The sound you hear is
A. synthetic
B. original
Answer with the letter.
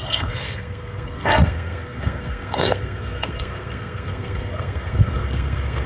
A